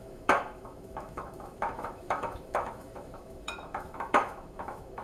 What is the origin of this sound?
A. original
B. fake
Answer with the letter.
B